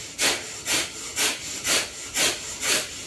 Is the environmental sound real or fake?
real